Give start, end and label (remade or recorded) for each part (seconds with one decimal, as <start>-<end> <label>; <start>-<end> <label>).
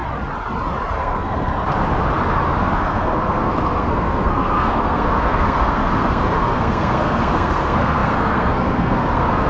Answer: 0.0-1.0 recorded; 1.0-1.5 remade; 1.5-2.6 recorded; 2.6-9.5 remade